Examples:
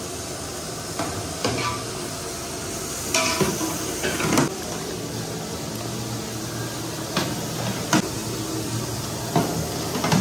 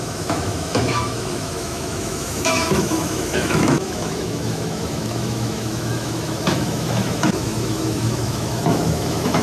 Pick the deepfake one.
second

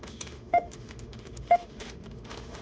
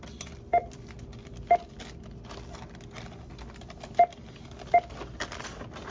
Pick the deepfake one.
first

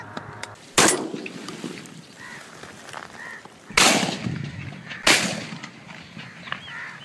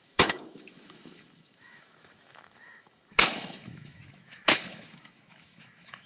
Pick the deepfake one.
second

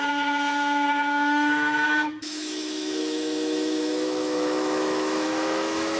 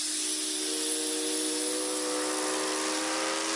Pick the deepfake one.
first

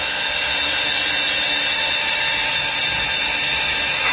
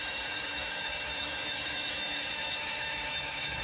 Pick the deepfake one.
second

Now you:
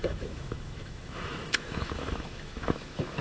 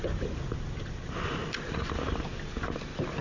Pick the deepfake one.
first